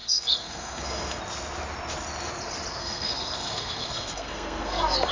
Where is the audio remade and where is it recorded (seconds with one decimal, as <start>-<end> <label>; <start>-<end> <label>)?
0.0-1.2 remade; 1.2-2.8 recorded; 2.8-5.1 remade